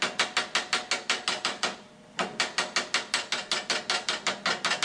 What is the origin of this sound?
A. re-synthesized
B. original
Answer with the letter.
B